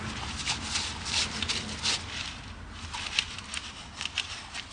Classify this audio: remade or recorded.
recorded